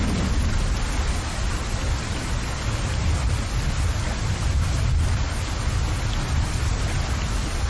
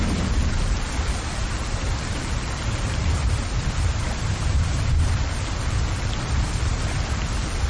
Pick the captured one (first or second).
first